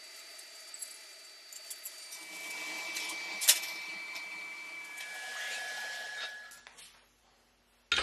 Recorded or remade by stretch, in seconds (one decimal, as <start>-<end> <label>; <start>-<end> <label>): 0.0-8.0 recorded